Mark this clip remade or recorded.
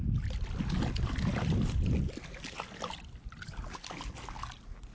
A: recorded